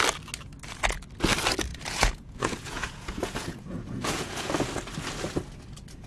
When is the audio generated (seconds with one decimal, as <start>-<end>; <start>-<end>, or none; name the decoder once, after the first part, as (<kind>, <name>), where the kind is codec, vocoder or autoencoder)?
1.7-4.5 (vocoder, Vocos)